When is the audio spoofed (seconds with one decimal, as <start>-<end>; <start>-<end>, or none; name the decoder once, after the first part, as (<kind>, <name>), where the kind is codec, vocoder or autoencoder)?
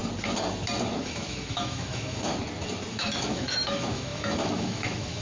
1.0-2.3 (autoencoder, DAC-VAE); 2.9-5.2